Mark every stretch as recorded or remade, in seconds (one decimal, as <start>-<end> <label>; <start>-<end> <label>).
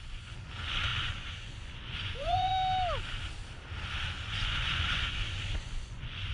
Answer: 0.0-2.5 remade; 2.5-4.2 recorded; 4.2-6.3 remade